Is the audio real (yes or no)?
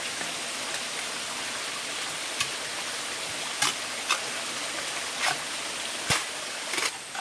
yes